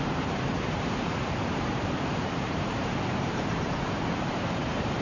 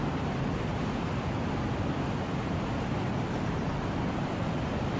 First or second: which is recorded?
second